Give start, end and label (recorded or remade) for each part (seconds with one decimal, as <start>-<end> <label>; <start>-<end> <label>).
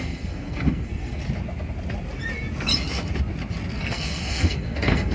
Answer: 0.0-1.2 remade; 1.2-3.8 recorded; 3.8-5.1 remade